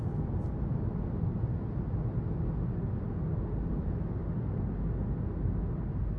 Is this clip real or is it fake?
real